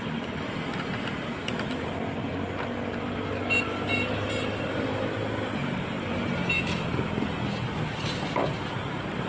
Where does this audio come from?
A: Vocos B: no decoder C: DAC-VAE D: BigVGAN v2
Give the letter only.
B